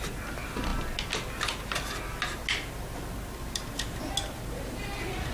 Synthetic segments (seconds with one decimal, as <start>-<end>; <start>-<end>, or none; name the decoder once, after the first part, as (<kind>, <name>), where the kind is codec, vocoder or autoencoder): none